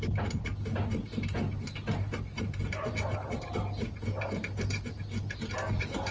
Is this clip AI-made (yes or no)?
no